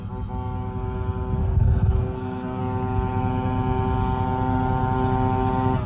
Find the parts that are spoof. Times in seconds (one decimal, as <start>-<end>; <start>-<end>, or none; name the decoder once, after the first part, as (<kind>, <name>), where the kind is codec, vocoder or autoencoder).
1.4-2.6 (codec, SNAC)